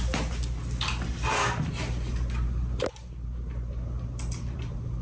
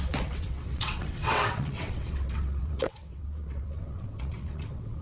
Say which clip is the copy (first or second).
second